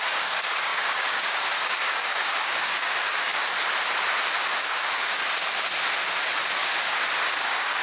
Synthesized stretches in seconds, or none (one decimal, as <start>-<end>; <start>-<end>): 0.0-3.3; 4.6-5.2; 7.3-7.8